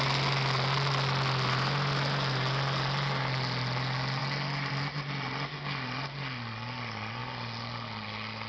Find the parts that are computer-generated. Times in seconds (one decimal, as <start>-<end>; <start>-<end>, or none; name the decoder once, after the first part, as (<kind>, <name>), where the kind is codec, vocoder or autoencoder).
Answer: none